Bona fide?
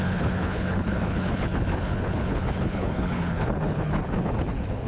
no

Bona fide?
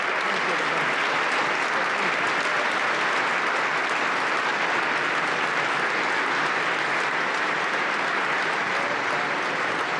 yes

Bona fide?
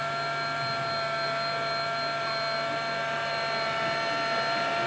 yes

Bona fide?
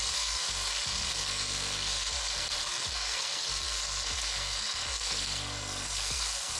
no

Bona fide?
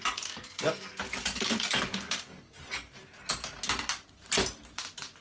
yes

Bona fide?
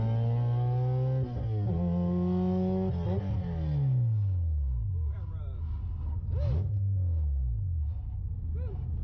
yes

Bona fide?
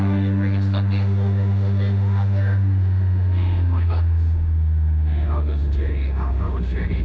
no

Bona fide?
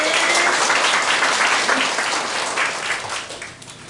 yes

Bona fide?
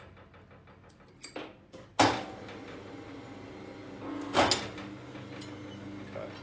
yes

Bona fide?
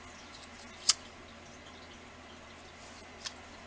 yes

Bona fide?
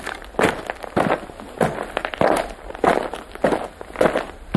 yes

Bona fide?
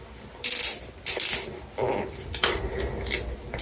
yes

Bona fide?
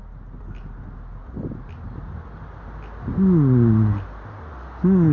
yes